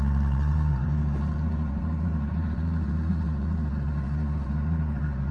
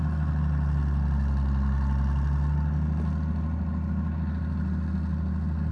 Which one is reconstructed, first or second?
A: first